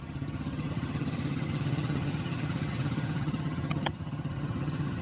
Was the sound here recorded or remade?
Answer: remade